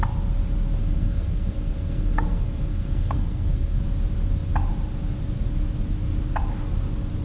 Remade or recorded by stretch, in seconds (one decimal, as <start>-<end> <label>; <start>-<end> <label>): 0.0-0.8 recorded; 0.8-3.8 remade; 3.8-7.2 recorded